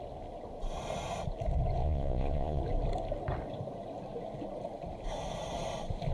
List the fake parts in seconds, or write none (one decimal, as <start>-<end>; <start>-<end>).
1.8-2.6